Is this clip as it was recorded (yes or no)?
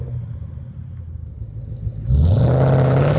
yes